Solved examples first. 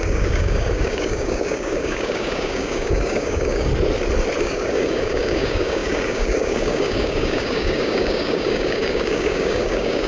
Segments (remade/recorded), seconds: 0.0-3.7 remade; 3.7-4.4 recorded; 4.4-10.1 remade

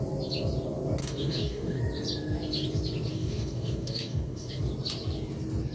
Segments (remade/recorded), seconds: 0.0-1.0 recorded; 1.0-1.8 remade; 1.8-3.1 recorded; 3.1-4.6 remade; 4.6-5.7 recorded